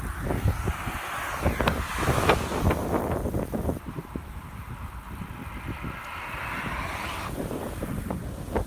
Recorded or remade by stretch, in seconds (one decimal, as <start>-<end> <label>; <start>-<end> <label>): 0.0-4.0 recorded; 4.0-4.7 remade; 4.7-8.7 recorded